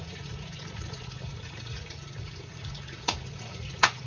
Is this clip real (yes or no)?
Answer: no